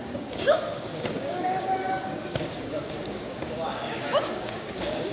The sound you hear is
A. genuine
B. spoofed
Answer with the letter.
B